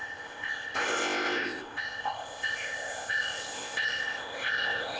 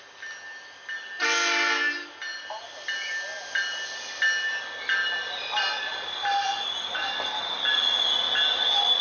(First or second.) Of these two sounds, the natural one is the second